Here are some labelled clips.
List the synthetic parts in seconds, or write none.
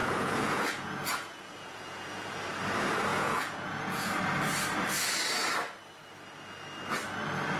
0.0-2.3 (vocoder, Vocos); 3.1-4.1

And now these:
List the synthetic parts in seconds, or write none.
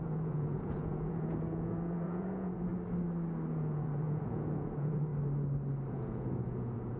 0.0-2.7 (vocoder, Vocos); 3.5-5.1; 5.9-7.0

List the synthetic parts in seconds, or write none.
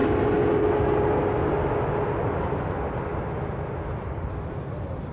none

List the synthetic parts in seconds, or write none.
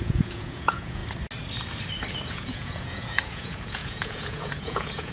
0.0-1.0 (vocoder, Vocos); 2.3-5.1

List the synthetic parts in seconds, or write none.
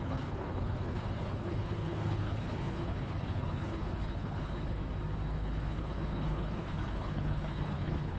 0.0-4.8 (codec, HILCodec); 5.3-8.2